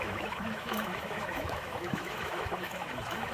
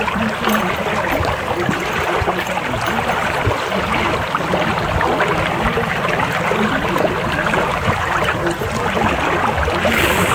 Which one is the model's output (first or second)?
first